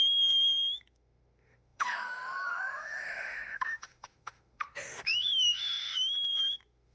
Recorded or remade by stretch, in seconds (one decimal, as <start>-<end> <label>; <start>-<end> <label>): 0.0-6.9 remade